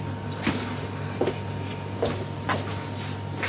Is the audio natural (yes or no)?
yes